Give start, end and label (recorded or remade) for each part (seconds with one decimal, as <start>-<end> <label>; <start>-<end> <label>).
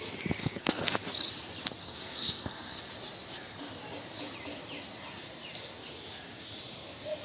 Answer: 0.0-0.4 recorded; 0.4-0.9 remade; 0.9-1.8 recorded; 1.8-2.8 remade; 2.8-7.2 recorded